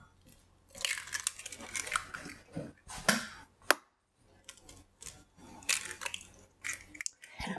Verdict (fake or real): real